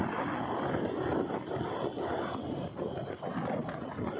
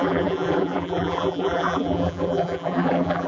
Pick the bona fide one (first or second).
first